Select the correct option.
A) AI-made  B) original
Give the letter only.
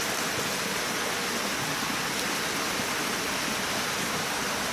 B